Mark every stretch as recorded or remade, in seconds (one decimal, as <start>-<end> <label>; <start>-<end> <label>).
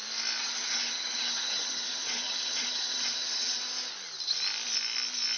0.0-0.4 recorded; 0.4-3.6 remade; 3.6-5.4 recorded